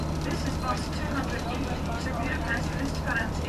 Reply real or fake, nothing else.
fake